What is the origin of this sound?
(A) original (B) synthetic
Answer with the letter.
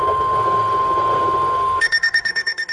B